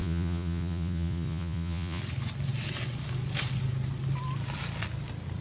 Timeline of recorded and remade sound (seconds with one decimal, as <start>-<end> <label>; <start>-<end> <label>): 0.0-2.0 remade; 2.0-5.4 recorded